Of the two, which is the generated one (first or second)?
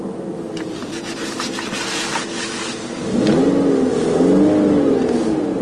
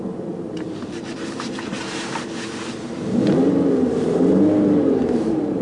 second